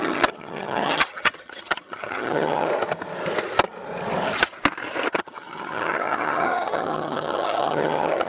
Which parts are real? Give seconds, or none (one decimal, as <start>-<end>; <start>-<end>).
2.7-5.1